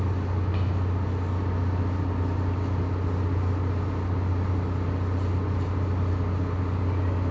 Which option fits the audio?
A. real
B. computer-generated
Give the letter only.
A